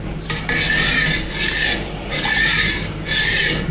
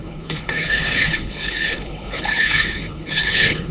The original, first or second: first